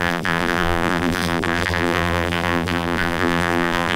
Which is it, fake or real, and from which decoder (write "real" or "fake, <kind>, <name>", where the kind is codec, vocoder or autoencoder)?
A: fake, vocoder, BigVGAN v2